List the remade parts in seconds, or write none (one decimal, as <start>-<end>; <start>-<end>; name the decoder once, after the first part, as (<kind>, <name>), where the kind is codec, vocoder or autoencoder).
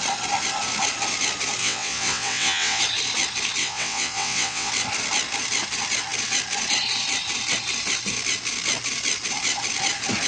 1.6-2.8 (vocoder, WaveNeXt); 3.6-4.7